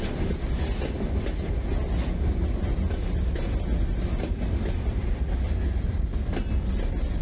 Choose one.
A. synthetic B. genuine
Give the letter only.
B